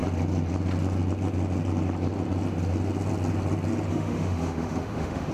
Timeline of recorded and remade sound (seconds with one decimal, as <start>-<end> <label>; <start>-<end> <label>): 0.0-3.9 recorded; 3.9-5.3 remade